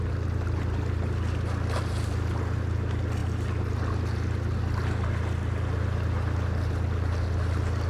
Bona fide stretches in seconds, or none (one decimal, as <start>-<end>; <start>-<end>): 0.0-7.9